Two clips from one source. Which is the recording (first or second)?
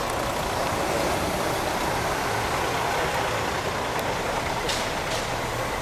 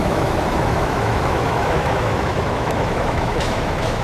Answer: first